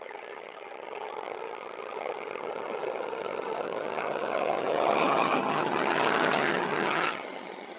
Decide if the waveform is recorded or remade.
remade